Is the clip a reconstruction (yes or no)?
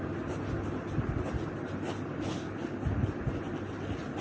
no